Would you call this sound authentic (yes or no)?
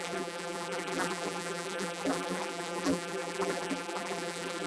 no